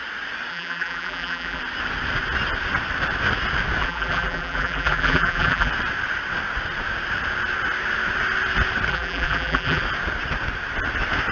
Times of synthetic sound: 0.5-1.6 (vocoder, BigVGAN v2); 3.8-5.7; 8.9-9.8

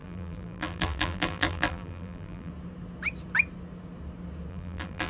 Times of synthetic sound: 0.0-2.5 (vocoder, BigVGAN v2); 4.5-5.1